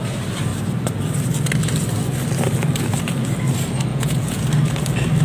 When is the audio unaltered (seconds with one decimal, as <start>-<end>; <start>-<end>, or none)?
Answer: 0.0-3.9; 4.4-5.2